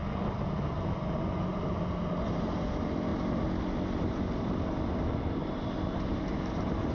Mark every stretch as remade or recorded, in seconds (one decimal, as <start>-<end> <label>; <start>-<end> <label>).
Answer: 0.0-5.4 recorded; 5.4-6.3 remade; 6.3-6.9 recorded